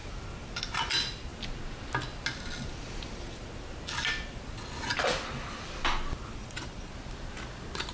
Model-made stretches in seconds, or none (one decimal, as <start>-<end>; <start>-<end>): 6.4-6.9